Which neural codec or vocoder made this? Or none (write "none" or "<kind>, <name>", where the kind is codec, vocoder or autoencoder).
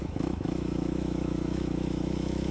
autoencoder, DAC-VAE